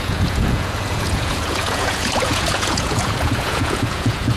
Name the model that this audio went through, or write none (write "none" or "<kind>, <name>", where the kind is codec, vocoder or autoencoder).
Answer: vocoder, Vocos